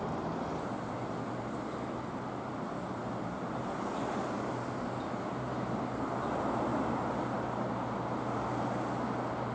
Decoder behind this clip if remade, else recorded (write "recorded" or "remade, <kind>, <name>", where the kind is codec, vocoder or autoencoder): recorded